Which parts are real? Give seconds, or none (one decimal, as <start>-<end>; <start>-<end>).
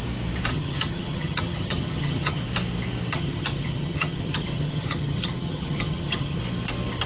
0.0-0.5; 2.4-3.1; 6.4-7.1